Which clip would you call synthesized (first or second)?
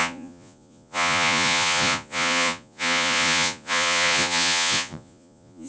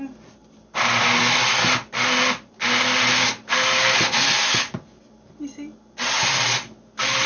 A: first